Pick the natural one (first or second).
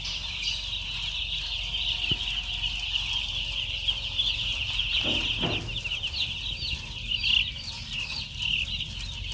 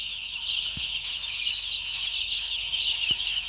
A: first